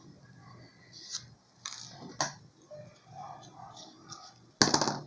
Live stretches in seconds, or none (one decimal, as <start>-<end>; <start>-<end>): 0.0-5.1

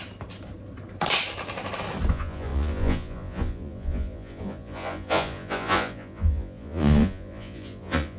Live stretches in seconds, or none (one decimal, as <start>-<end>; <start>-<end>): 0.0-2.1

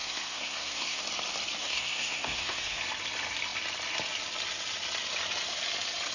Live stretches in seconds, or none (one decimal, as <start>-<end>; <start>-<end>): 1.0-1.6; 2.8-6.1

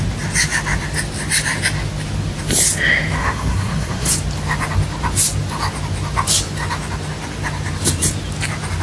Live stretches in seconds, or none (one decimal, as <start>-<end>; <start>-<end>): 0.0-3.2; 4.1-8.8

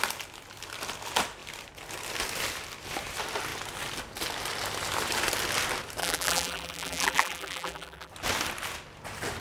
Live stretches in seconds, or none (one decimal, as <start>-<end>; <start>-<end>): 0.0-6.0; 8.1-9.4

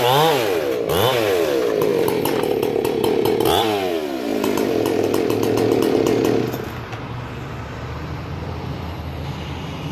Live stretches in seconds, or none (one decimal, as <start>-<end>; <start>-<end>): 0.0-9.9

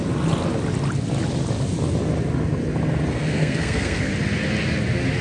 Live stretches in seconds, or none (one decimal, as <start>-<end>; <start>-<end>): 0.0-3.1; 4.1-5.2

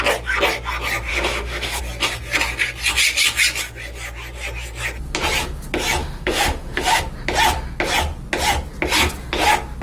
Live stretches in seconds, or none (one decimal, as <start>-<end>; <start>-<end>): 0.0-1.1; 1.8-6.0; 7.0-9.8